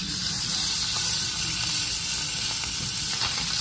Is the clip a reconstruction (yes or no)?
no